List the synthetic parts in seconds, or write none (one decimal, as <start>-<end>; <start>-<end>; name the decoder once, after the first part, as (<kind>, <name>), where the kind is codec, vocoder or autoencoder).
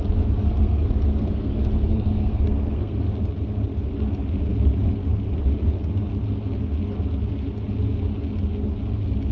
0.4-3.0 (codec, SNAC)